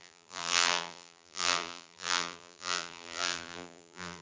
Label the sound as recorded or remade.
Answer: remade